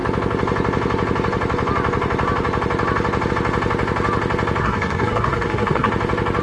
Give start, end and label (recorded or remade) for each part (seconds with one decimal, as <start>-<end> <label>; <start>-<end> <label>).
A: 0.0-4.6 recorded; 4.6-5.9 remade; 5.9-6.4 recorded